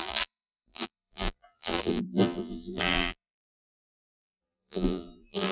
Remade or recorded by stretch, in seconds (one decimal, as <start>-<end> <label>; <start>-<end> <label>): 0.0-5.5 remade